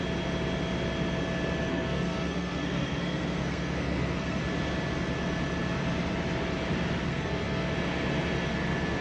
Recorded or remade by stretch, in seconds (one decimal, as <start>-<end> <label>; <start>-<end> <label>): 0.0-1.7 recorded; 1.7-4.4 remade; 4.4-7.1 recorded; 7.1-7.7 remade; 7.7-9.0 recorded